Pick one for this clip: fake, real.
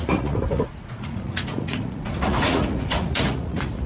fake